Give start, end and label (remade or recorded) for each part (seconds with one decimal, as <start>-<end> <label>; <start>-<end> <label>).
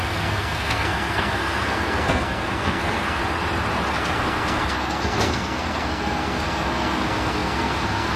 0.0-3.2 remade; 3.2-3.9 recorded; 3.9-8.2 remade